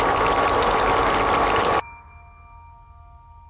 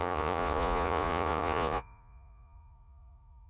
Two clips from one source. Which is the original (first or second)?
first